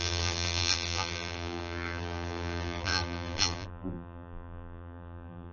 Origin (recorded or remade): remade